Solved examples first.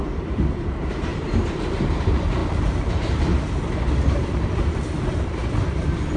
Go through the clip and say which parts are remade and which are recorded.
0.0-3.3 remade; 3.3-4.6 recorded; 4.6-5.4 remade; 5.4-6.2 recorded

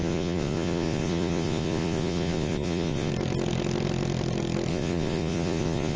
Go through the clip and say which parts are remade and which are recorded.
0.0-3.1 remade; 3.1-4.7 recorded; 4.7-6.0 remade